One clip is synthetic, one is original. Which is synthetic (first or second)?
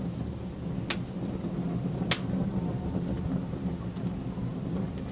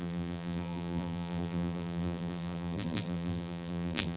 second